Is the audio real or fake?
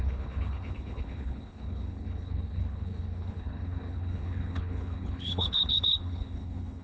fake